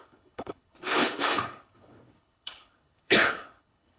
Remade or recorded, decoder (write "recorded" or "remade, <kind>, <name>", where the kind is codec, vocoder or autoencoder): remade, codec, HILCodec